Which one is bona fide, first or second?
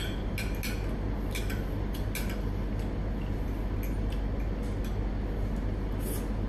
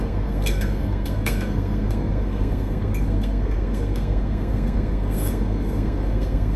first